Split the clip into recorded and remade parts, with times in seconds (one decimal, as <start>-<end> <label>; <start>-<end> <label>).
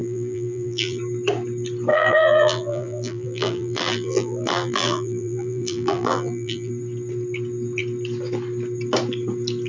0.0-1.0 remade; 1.0-1.9 recorded; 1.9-6.7 remade; 6.7-9.7 recorded